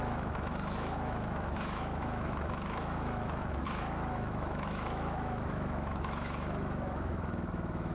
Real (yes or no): no